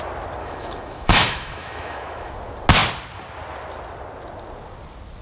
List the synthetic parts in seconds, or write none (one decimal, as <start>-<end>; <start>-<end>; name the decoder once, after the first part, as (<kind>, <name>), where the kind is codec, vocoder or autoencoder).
0.4-2.3 (autoencoder, DAC-VAE)